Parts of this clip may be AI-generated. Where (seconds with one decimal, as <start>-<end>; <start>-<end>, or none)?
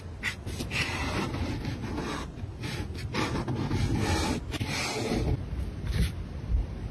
none